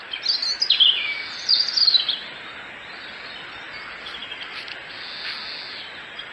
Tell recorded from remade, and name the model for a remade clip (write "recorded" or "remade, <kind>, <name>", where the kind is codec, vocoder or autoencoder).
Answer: recorded